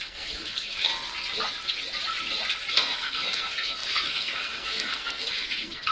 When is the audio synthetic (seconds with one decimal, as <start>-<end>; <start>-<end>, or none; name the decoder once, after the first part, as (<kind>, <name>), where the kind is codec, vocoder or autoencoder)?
0.0-0.9 (codec, SNAC); 2.7-5.9